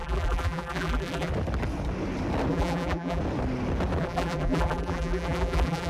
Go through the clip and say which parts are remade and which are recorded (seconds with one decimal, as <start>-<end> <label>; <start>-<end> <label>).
0.0-1.3 remade; 1.3-2.5 recorded; 2.5-3.2 remade; 3.2-4.0 recorded; 4.0-5.9 remade